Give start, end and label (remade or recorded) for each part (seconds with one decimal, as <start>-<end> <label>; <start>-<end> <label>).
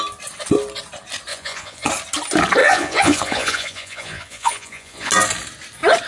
0.0-1.3 recorded; 1.3-1.9 remade; 1.9-2.6 recorded; 2.6-5.1 remade; 5.1-6.1 recorded